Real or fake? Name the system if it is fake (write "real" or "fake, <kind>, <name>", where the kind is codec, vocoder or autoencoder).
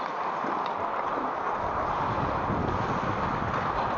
real